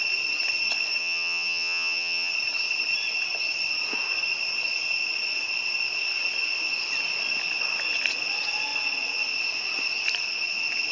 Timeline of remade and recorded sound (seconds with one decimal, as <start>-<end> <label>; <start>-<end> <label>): 0.0-1.0 recorded; 1.0-2.3 remade; 2.3-10.9 recorded